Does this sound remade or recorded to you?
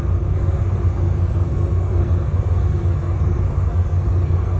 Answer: remade